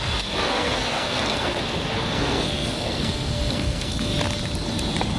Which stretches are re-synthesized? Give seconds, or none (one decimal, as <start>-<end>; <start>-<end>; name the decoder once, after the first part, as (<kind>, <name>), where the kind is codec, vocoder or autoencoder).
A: 0.0-4.1 (codec, SNAC)

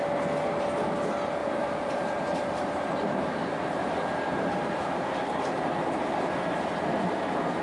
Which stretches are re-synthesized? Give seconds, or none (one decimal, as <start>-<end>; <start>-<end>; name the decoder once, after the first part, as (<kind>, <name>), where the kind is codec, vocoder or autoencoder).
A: 1.4-6.0 (vocoder, BigVGAN v2)

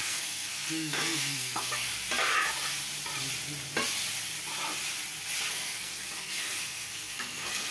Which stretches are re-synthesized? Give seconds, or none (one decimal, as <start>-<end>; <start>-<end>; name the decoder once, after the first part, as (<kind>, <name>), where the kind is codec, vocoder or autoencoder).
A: 0.0-1.9 (codec, SNAC); 5.5-7.7

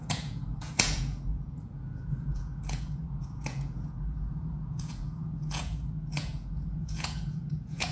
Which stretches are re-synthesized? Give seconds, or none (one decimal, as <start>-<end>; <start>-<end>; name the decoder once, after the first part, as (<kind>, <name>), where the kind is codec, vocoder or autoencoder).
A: 0.0-7.9 (vocoder, Vocos)

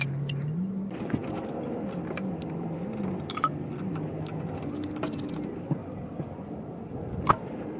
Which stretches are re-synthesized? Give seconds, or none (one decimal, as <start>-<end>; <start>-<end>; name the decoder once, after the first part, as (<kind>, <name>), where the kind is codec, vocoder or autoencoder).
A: none